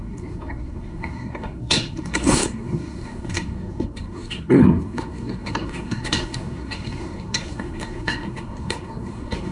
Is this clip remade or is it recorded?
remade